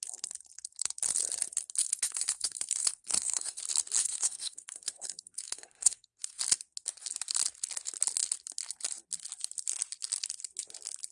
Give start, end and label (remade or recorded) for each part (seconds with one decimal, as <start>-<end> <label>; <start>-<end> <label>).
0.0-1.8 recorded; 1.8-3.6 remade; 3.6-4.0 recorded; 4.0-6.4 remade; 6.4-11.1 recorded